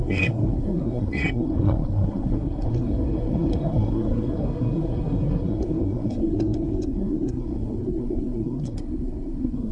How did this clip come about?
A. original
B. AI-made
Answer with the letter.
B